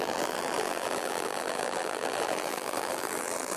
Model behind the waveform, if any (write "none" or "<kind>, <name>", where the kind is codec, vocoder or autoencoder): vocoder, BigVGAN v2